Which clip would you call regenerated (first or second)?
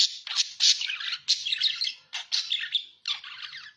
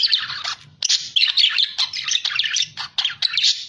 second